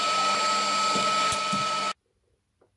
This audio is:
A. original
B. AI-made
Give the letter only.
A